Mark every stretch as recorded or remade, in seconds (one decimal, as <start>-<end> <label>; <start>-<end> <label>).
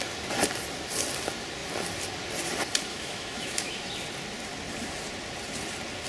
0.0-2.9 recorded; 2.9-3.9 remade; 3.9-6.1 recorded